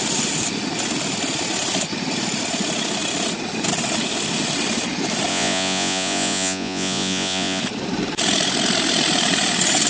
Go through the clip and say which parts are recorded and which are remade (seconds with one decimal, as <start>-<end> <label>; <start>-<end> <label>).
0.0-5.3 recorded; 5.3-7.6 remade; 7.6-9.9 recorded